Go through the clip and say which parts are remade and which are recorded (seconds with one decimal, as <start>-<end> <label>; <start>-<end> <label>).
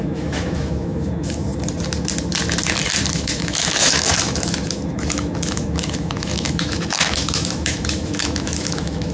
0.0-1.5 remade; 1.5-3.1 recorded; 3.1-9.1 remade